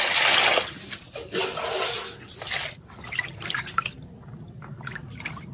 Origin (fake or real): real